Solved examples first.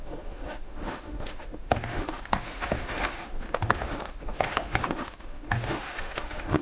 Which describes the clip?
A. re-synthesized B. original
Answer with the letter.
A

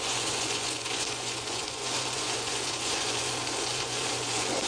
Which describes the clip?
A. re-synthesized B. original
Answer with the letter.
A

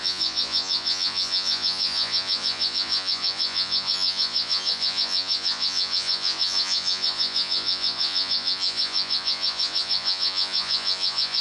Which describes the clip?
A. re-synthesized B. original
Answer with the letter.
A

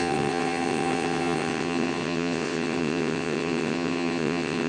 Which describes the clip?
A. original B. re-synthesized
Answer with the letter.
B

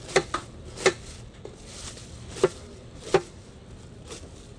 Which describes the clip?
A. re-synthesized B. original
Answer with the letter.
B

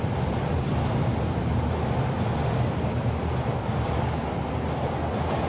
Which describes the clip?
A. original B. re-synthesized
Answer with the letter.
A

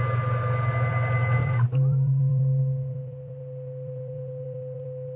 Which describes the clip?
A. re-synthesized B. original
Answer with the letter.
B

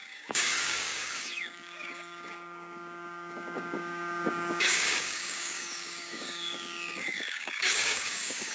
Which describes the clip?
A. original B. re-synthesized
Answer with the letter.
B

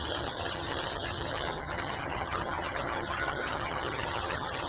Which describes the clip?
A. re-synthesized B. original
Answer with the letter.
A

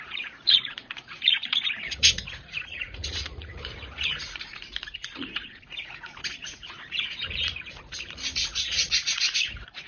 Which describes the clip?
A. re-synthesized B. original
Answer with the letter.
A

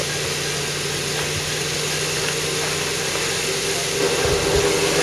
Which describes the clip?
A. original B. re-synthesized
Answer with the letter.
A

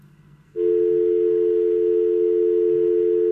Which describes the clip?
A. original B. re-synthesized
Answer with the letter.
B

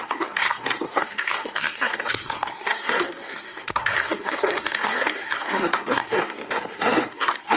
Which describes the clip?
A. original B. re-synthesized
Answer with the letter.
B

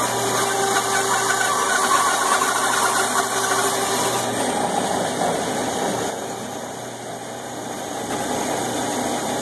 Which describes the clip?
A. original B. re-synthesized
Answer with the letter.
A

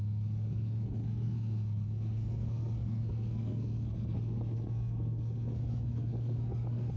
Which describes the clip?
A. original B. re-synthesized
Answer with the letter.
B